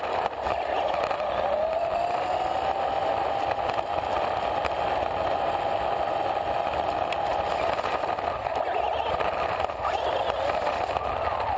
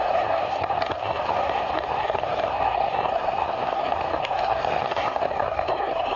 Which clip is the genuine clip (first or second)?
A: first